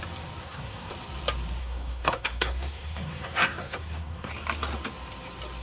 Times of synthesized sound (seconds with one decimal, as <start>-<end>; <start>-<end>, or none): 0.4-0.9; 1.6-4.3

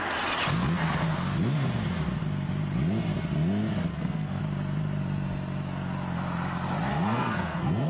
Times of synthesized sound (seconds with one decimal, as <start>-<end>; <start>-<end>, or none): 3.9-4.4; 6.9-7.9